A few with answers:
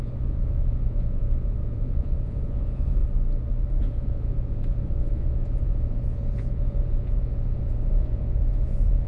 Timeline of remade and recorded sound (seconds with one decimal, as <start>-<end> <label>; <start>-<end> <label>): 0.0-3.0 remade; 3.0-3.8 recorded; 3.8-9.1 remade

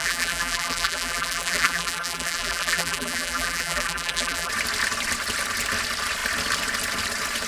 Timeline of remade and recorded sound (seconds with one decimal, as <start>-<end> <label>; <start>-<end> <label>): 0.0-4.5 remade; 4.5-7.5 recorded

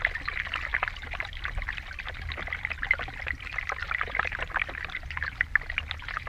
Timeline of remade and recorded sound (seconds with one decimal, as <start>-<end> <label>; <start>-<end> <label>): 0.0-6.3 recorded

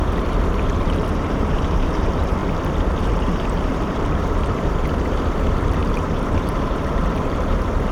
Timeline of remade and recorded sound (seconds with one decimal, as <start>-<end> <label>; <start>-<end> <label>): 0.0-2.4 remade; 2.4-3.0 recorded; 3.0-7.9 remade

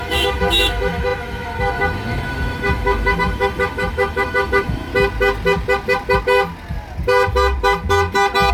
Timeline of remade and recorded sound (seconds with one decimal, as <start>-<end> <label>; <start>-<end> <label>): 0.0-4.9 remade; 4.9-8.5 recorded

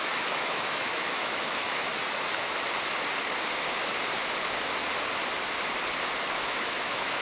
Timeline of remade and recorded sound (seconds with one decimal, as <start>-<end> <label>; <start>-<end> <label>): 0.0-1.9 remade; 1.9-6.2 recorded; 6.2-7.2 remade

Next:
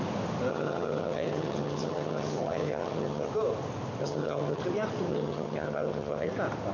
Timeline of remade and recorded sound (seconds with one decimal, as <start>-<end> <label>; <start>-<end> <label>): 0.0-0.5 recorded; 0.5-3.3 remade; 3.3-4.0 recorded; 4.0-4.6 remade; 4.6-5.1 recorded; 5.1-6.3 remade; 6.3-6.7 recorded

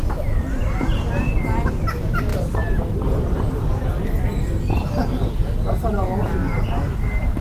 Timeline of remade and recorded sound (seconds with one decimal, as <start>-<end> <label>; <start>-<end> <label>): 0.0-7.4 recorded